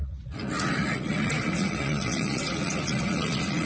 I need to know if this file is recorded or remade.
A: remade